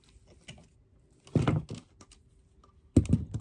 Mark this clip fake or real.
real